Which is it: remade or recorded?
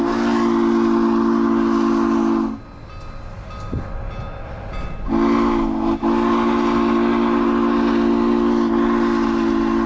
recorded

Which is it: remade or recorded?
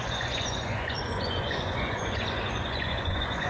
remade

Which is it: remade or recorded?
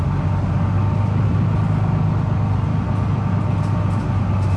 recorded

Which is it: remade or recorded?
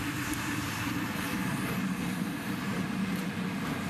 remade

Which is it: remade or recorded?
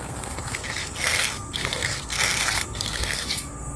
remade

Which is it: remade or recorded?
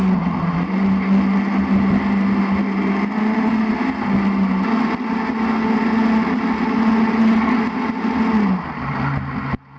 recorded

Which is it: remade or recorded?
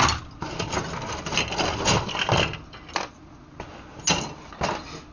recorded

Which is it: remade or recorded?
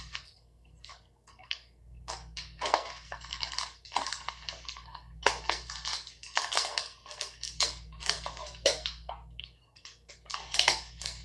remade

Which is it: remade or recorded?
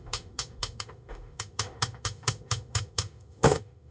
remade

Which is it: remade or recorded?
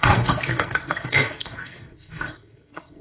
remade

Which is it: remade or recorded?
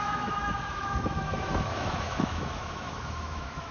remade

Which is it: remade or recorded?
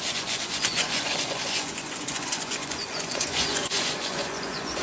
remade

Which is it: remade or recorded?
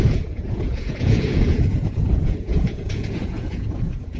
remade